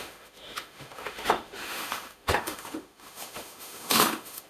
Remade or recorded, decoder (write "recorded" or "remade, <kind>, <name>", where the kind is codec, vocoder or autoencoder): remade, autoencoder, DAC-VAE